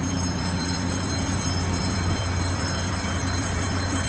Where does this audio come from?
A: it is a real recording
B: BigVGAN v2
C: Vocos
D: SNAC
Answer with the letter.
B